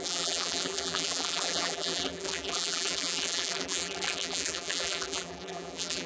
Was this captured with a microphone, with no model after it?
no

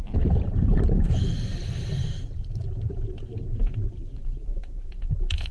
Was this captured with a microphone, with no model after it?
no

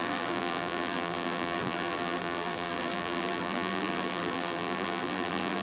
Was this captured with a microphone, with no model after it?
no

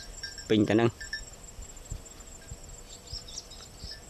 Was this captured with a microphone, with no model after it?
yes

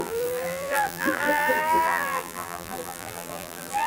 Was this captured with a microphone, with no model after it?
no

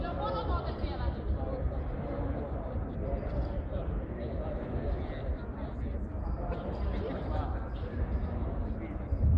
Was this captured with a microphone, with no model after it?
yes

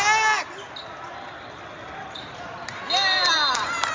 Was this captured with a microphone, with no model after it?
yes